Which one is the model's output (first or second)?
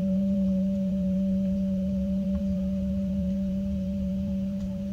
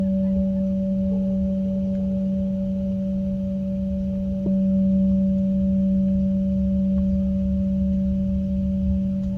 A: first